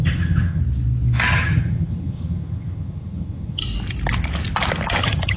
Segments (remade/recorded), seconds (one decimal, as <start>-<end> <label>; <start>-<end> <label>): 0.0-0.6 remade; 0.6-1.3 recorded; 1.3-3.6 remade; 3.6-5.0 recorded; 5.0-5.4 remade